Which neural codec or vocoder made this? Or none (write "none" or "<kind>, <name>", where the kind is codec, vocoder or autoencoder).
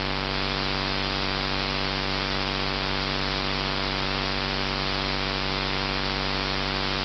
none